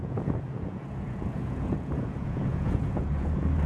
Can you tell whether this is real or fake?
fake